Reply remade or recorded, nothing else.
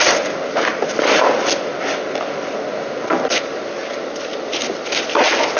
recorded